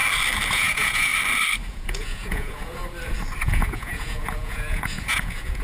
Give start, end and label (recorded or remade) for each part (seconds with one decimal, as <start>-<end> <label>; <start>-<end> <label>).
0.0-0.5 recorded; 0.5-1.1 remade; 1.1-1.7 recorded; 1.7-2.8 remade; 2.8-3.4 recorded; 3.4-5.6 remade